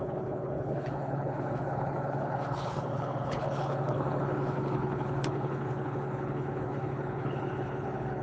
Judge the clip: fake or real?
fake